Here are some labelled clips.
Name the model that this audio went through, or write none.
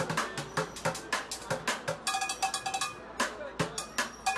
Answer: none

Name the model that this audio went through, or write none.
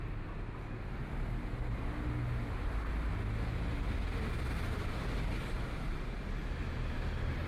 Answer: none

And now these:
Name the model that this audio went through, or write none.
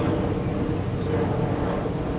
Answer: none